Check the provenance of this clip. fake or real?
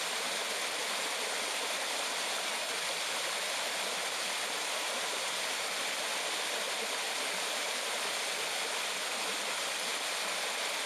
real